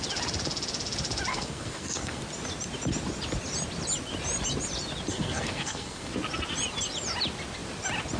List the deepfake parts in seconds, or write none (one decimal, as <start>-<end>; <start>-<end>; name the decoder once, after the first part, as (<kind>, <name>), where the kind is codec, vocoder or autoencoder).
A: 1.3-2.2 (codec, SNAC); 5.1-6.1